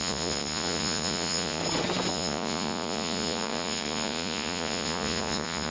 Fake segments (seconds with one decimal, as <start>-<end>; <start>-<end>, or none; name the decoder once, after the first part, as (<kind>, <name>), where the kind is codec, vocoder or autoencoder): 0.0-1.6 (vocoder, Vocos); 2.1-5.7